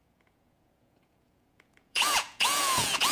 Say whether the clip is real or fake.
fake